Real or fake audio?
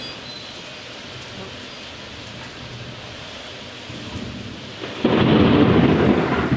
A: real